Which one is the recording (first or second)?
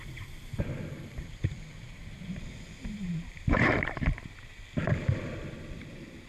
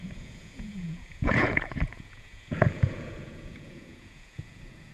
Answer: first